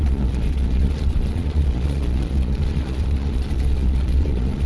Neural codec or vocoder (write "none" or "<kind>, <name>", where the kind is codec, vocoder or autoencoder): vocoder, Vocos